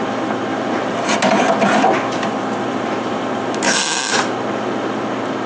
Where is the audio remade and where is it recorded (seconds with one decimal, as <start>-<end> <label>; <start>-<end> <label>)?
0.0-0.5 recorded; 0.5-3.8 remade; 3.8-5.5 recorded